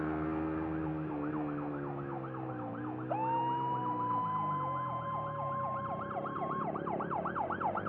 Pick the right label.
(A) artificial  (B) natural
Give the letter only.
B